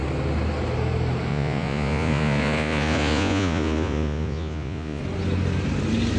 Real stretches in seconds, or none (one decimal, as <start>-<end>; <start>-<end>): 0.0-1.3; 5.0-6.2